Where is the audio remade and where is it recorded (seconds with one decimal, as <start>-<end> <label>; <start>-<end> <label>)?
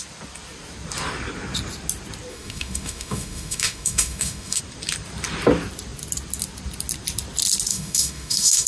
0.0-2.3 recorded; 2.3-4.6 remade; 4.6-7.7 recorded; 7.7-8.7 remade